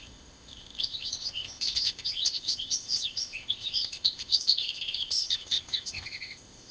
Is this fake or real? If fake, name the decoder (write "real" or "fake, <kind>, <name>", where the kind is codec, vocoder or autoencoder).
fake, codec, ZipCodec